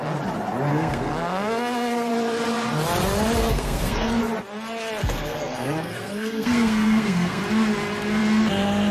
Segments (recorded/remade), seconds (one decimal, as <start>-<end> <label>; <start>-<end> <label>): 0.0-0.7 recorded; 0.7-2.1 remade; 2.1-3.4 recorded; 3.4-4.2 remade; 4.2-5.0 recorded; 5.0-7.4 remade; 7.4-8.9 recorded